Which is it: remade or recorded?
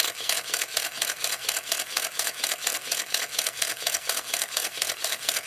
remade